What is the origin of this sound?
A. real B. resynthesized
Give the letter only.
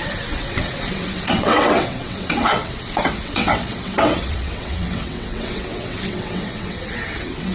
B